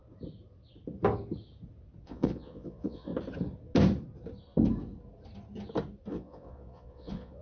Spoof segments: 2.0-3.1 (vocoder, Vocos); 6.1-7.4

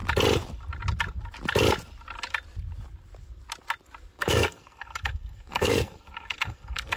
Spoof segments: 4.2-7.0 (codec, SNAC)

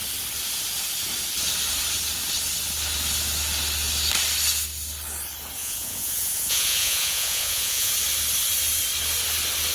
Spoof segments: 5.6-7.9 (vocoder, Vocos)

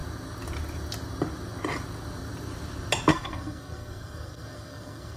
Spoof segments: 3.1-5.2 (codec, SNAC)